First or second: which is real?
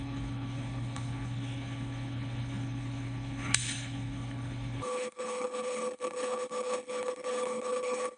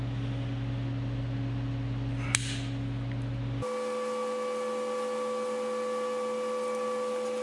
second